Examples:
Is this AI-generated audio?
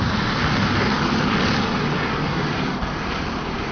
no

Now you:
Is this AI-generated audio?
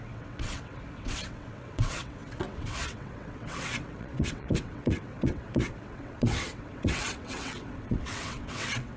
yes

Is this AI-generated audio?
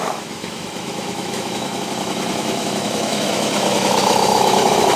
yes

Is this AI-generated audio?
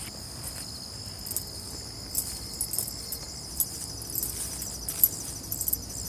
no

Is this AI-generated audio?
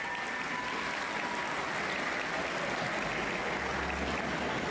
no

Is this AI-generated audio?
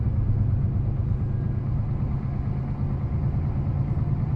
no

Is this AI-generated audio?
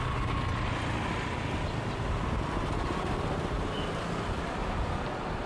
no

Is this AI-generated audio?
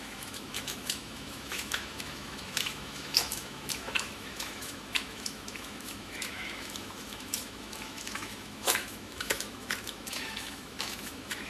yes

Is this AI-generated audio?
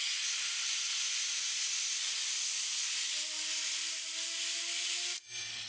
no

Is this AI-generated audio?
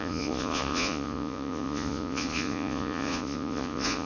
yes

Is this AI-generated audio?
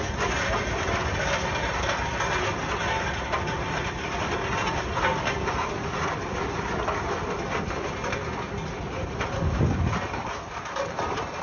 no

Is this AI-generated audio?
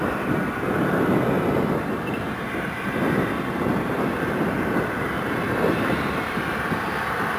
no